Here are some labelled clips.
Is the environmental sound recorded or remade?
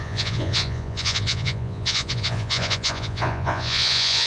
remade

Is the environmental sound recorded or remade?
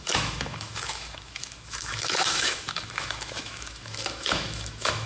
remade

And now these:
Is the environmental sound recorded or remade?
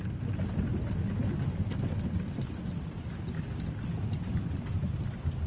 recorded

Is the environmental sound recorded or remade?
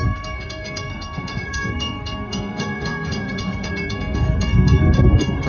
remade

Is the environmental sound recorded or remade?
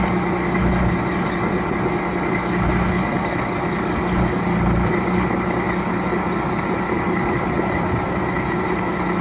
recorded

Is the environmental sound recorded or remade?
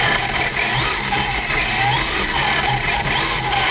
recorded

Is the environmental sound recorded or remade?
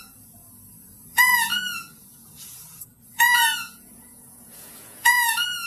remade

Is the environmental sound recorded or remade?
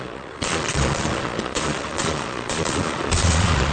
remade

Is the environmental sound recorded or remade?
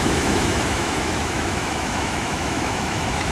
remade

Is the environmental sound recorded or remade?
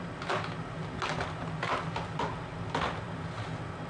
recorded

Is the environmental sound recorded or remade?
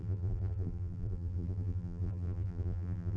remade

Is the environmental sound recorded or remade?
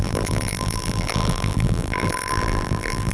remade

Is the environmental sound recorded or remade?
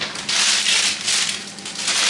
recorded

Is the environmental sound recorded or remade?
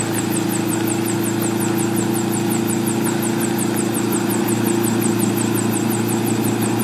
recorded